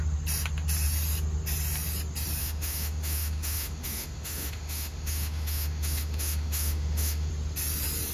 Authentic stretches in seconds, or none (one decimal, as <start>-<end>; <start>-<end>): 0.0-2.4; 7.3-8.1